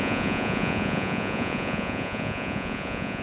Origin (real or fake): fake